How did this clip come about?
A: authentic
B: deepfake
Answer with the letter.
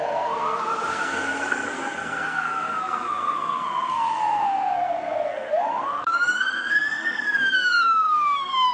B